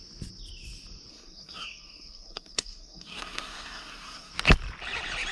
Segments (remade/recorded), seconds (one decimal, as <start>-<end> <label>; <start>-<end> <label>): 0.0-1.1 recorded; 1.1-4.3 remade; 4.3-5.3 recorded